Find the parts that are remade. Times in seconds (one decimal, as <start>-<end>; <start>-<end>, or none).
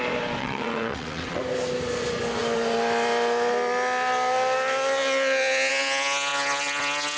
0.4-1.4